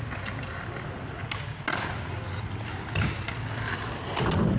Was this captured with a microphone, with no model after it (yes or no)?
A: yes